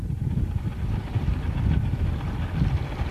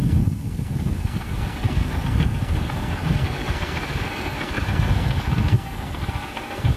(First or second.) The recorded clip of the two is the first